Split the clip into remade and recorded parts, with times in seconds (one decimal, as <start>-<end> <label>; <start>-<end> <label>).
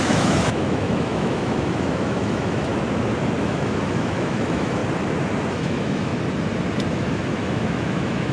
0.0-2.7 remade; 2.7-3.4 recorded; 3.4-4.8 remade; 4.8-5.5 recorded; 5.5-6.1 remade; 6.1-6.9 recorded; 6.9-8.3 remade